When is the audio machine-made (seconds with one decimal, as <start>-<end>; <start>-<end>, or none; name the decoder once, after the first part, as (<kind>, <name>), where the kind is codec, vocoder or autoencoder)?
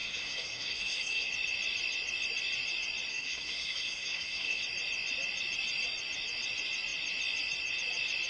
0.0-1.3 (codec, SNAC); 3.1-4.6